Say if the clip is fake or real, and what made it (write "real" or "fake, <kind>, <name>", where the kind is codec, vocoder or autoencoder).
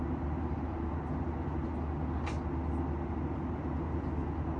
real